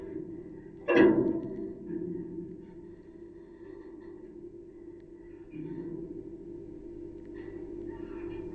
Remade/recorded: recorded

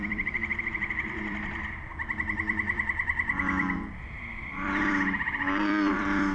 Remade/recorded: remade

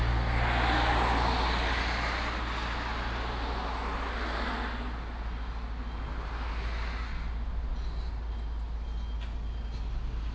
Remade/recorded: recorded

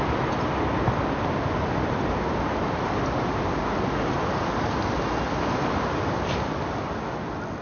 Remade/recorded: recorded